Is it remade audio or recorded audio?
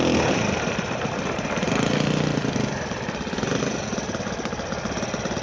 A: recorded